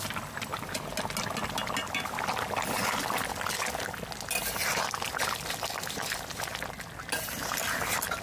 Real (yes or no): yes